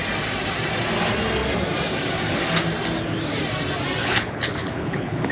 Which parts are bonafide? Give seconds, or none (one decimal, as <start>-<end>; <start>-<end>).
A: 0.0-4.0